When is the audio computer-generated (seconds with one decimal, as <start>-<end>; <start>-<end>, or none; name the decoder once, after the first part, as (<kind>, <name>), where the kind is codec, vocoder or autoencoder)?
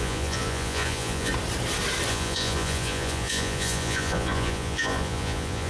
0.0-1.3 (vocoder, Vocos); 2.1-5.7